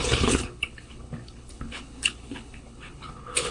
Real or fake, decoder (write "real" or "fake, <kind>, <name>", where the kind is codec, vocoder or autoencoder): fake, codec, HILCodec